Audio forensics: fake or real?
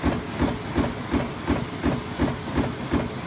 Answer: real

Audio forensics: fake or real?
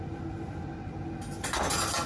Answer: real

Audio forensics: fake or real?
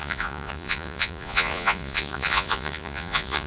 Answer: fake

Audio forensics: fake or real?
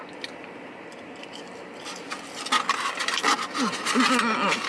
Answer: real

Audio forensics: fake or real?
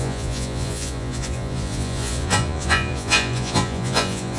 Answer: fake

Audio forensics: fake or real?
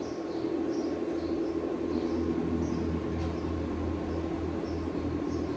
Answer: real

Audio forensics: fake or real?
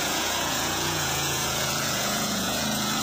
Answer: fake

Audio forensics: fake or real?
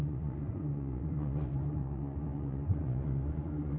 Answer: fake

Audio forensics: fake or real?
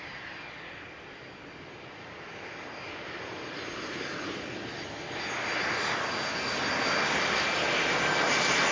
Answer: real